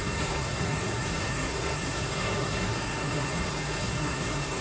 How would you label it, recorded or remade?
remade